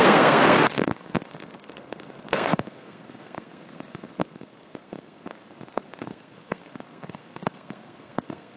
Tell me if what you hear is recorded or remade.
remade